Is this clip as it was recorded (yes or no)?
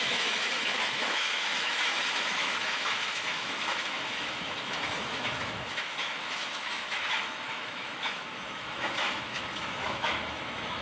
no